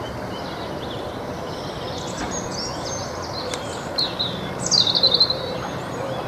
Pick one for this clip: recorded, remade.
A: recorded